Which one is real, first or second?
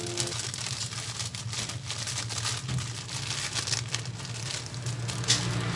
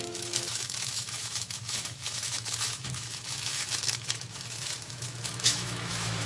first